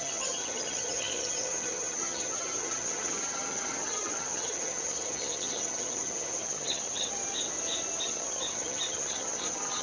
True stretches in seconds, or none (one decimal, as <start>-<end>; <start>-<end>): 7.2-8.0